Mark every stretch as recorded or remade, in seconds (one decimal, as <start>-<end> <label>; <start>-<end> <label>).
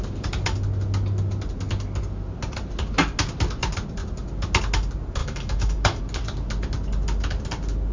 0.0-5.2 recorded; 5.2-6.0 remade; 6.0-7.9 recorded